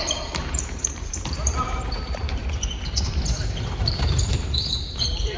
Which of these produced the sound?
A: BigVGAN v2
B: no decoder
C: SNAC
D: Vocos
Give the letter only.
A